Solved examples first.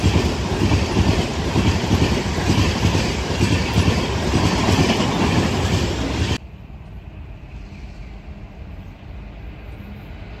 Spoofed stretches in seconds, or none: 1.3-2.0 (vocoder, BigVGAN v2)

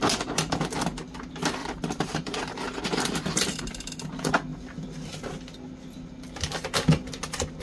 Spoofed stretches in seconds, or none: 1.6-3.6 (vocoder, BigVGAN v2)

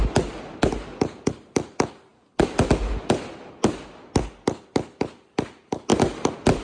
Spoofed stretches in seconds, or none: none

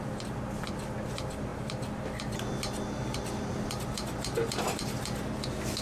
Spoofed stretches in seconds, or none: none

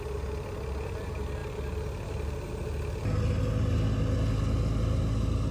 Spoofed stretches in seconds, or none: none